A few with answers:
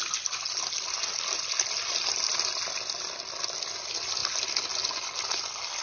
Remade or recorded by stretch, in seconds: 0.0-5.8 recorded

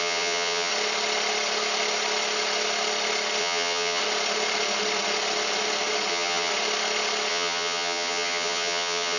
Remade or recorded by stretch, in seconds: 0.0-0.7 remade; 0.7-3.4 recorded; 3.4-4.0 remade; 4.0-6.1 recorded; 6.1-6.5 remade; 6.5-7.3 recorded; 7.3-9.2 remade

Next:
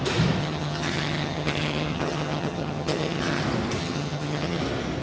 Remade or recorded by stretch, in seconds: 0.0-0.4 recorded; 0.4-3.4 remade; 3.4-3.8 recorded; 3.8-4.6 remade; 4.6-5.0 recorded

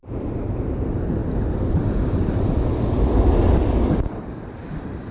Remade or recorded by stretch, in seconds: 0.0-5.1 recorded

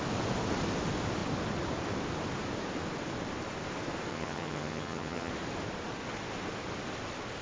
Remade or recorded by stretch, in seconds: 0.0-4.1 recorded; 4.1-5.3 remade; 5.3-7.4 recorded

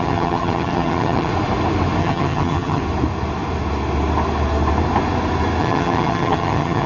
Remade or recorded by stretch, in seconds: 0.0-1.3 remade; 1.3-2.0 recorded; 2.0-2.8 remade; 2.8-5.6 recorded; 5.6-6.9 remade

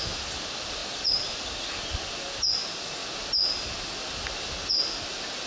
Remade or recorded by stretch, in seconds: 0.0-5.5 recorded

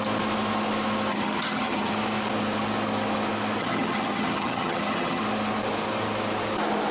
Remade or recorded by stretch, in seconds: 0.0-1.1 recorded; 1.1-1.9 remade; 1.9-3.6 recorded; 3.6-5.2 remade; 5.2-6.9 recorded